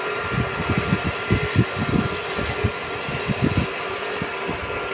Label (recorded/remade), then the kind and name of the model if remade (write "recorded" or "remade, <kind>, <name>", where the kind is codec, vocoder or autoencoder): recorded